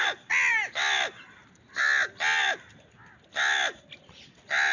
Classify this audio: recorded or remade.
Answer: recorded